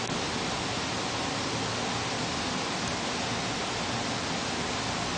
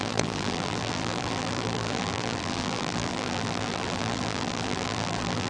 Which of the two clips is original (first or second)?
first